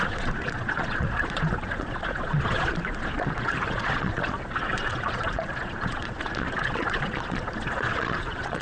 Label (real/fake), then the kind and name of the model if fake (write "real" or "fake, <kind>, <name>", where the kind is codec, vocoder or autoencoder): fake, vocoder, Vocos